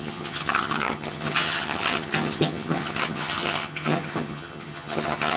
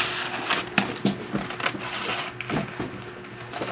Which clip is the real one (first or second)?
second